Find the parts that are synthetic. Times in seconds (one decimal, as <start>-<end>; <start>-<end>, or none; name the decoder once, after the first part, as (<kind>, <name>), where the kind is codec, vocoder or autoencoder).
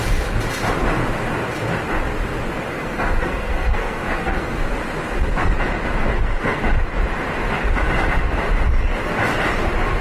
2.7-4.6 (codec, SNAC); 6.0-6.6